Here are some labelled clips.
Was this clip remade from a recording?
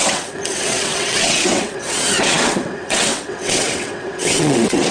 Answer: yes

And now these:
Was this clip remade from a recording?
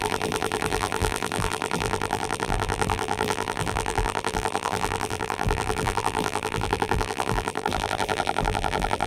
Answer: yes